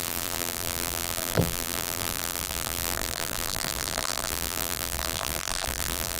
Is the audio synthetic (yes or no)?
yes